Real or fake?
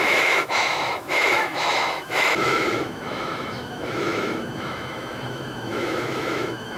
fake